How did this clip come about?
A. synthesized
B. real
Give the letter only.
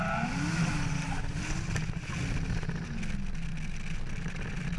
B